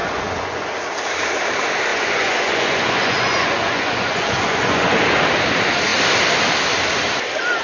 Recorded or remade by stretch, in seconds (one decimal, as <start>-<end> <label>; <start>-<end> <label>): 0.0-0.7 remade; 0.7-1.9 recorded; 1.9-4.9 remade; 4.9-7.6 recorded